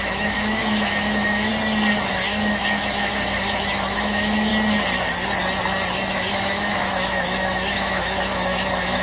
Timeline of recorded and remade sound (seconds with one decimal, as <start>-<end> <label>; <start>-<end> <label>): 0.0-1.5 remade; 1.5-2.1 recorded; 2.1-4.5 remade; 4.5-6.1 recorded; 6.1-9.0 remade